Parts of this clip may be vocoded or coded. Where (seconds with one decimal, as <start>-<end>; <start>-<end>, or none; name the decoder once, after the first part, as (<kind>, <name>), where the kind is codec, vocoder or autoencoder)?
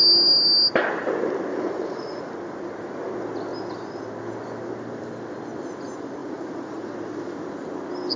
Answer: 1.5-2.3 (vocoder, Vocos); 6.2-6.9